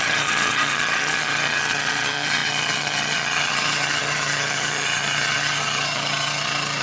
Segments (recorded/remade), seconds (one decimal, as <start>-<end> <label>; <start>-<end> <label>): 0.0-6.8 remade